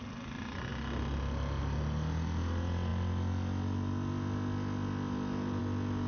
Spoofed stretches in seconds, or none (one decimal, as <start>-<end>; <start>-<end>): none